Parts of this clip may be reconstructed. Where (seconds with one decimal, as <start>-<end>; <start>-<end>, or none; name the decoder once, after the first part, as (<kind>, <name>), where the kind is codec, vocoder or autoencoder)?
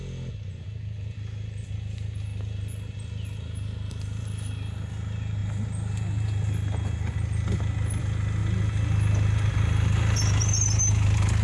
none